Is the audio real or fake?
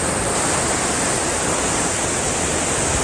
real